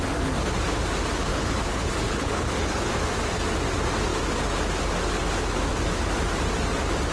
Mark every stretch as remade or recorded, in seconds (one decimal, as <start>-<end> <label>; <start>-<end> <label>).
0.0-1.3 recorded; 1.3-2.9 remade; 2.9-7.1 recorded